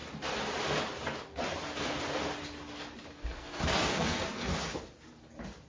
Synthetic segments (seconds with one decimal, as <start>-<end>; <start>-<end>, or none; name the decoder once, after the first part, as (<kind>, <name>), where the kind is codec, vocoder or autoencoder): 3.1-4.5 (codec, SNAC)